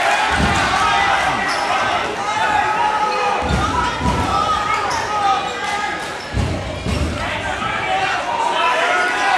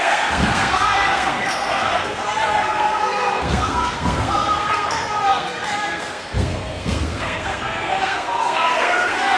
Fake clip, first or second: second